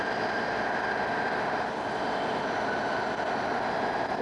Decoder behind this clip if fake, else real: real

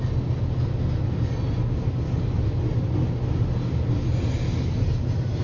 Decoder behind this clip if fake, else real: real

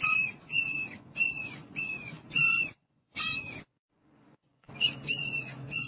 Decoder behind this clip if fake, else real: fake, vocoder, Vocos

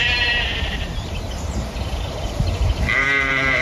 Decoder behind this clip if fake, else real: fake, vocoder, BigVGAN v2